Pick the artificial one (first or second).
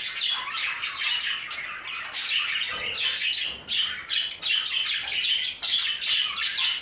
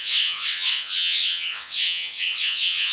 second